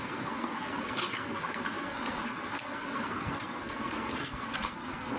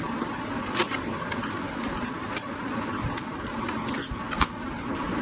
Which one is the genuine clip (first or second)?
second